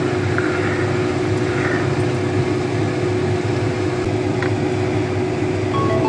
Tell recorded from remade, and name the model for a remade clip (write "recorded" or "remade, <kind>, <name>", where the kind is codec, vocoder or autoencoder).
recorded